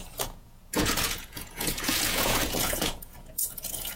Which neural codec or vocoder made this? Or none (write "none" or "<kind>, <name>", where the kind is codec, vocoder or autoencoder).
vocoder, Vocos